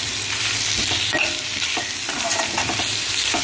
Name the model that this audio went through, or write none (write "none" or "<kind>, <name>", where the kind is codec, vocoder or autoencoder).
none